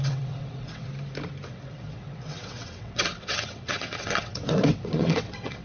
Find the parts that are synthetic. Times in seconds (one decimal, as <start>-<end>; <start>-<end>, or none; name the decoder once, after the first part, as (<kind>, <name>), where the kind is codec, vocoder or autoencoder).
0.0-0.9 (vocoder, WaveNeXt); 1.5-5.6